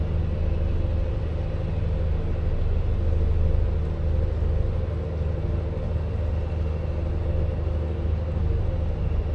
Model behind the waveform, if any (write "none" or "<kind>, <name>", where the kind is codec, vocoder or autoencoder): none